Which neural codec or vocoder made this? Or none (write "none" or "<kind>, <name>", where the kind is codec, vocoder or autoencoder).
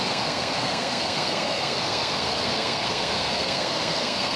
codec, SNAC